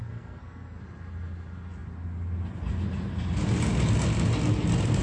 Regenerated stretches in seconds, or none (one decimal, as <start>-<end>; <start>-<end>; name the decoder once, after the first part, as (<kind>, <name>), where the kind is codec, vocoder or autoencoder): 0.0-0.8 (codec, SNAC)